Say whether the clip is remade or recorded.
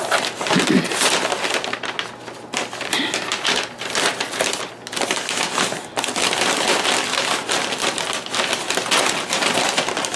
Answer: recorded